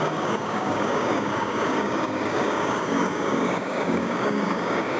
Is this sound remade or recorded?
remade